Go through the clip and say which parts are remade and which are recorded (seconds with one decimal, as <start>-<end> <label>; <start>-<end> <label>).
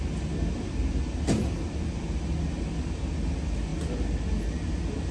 0.0-5.1 recorded